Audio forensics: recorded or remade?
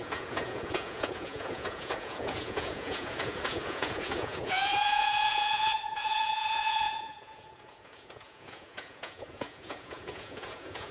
remade